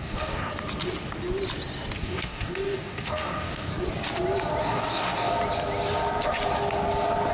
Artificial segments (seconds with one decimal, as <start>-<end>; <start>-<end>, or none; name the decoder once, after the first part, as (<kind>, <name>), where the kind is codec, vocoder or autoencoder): 0.0-0.5 (codec, DAC); 2.0-3.7; 4.6-5.3